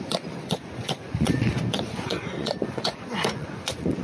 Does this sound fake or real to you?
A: fake